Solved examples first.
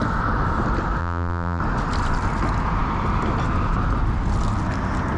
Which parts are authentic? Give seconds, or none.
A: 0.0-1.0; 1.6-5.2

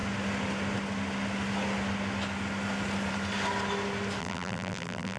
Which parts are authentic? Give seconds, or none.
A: 0.0-4.2

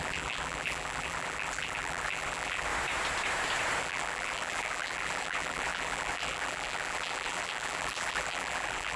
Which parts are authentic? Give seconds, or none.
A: 2.7-3.8

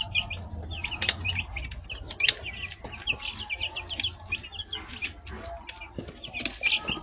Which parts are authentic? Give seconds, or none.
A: 0.0-7.0